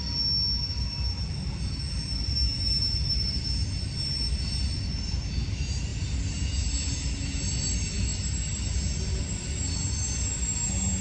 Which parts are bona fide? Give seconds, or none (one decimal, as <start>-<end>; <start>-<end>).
0.0-11.0